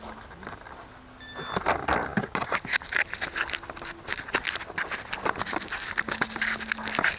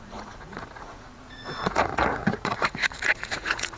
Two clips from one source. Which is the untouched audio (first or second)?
first